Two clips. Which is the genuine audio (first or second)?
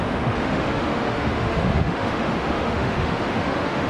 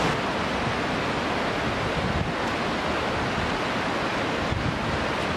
second